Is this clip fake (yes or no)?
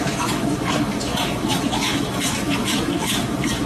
yes